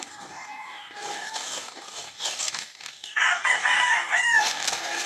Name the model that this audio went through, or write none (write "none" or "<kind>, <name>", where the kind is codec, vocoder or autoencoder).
codec, DAC